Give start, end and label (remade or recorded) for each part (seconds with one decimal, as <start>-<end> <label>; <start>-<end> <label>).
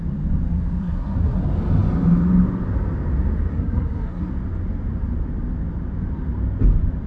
0.0-0.8 recorded; 0.8-1.4 remade; 1.4-3.5 recorded; 3.5-4.3 remade; 4.3-7.1 recorded